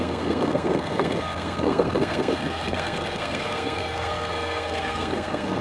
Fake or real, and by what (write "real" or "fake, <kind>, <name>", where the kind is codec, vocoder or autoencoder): fake, codec, SNAC